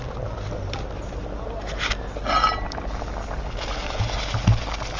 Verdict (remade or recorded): recorded